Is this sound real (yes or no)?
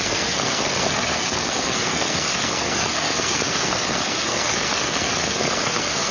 no